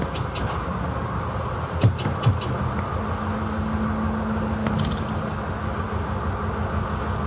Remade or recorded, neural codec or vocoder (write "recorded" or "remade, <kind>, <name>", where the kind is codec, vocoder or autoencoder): recorded